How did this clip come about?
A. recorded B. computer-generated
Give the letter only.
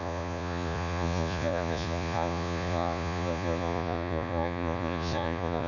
B